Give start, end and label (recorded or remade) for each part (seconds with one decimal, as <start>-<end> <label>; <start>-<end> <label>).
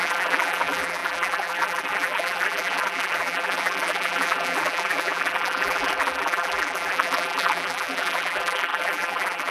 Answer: 0.0-9.5 remade